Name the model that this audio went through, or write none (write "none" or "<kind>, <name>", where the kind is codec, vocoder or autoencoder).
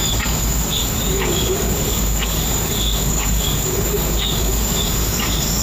codec, DAC